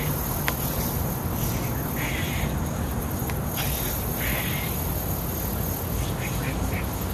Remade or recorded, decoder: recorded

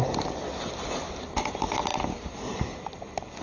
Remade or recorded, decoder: recorded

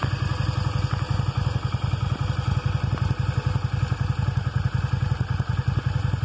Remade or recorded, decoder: recorded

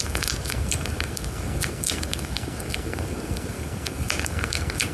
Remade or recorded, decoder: remade, codec, SNAC